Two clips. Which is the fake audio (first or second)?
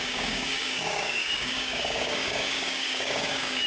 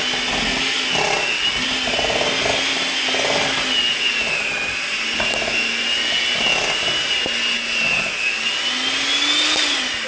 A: first